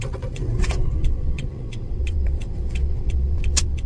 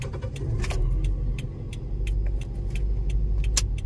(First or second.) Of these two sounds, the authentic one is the second